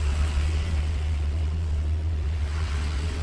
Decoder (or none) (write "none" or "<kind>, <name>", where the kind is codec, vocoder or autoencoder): vocoder, WaveNeXt